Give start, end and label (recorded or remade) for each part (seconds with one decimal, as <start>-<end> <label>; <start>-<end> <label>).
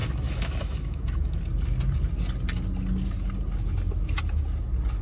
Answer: 0.0-1.4 remade; 1.4-5.0 recorded